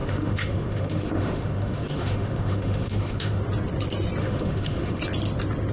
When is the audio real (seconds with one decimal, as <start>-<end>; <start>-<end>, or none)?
3.4-4.2; 5.0-5.7